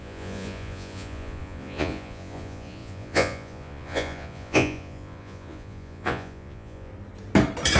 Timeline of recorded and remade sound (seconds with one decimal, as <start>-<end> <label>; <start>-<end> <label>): 0.0-6.9 remade; 6.9-7.8 recorded